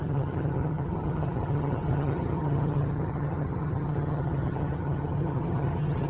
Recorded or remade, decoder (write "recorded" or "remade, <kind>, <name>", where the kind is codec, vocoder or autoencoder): remade, vocoder, HiFi-GAN